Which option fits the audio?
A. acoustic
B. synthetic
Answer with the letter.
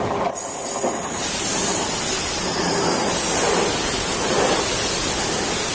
A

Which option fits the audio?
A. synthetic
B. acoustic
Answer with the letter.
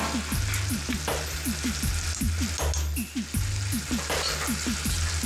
B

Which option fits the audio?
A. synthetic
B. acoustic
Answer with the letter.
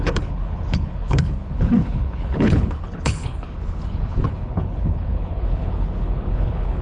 A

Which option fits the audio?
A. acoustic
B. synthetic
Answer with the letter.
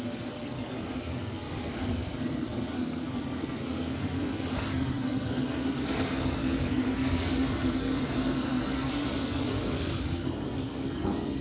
B